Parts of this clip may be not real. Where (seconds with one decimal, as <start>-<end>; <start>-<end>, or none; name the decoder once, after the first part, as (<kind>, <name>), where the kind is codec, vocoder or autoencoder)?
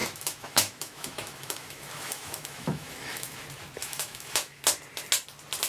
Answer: 0.0-3.4 (autoencoder, DAC-VAE); 3.8-4.6